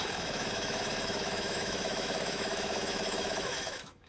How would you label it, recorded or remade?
remade